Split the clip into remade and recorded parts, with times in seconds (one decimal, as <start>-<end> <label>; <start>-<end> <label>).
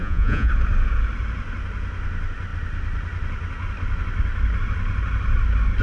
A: 0.0-0.5 remade; 0.5-5.8 recorded